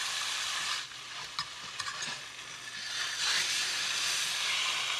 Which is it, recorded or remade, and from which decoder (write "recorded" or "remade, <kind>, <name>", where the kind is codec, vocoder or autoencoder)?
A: recorded